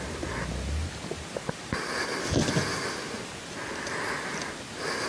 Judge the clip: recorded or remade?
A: recorded